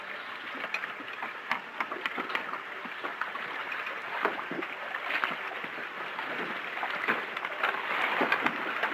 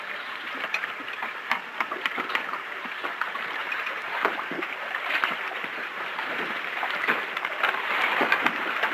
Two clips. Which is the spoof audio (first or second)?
second